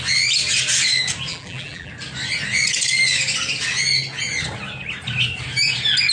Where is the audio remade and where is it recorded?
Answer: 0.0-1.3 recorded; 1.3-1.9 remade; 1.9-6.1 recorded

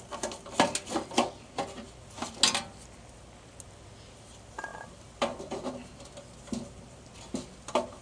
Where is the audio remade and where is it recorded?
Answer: 0.0-4.7 recorded; 4.7-5.7 remade; 5.7-8.0 recorded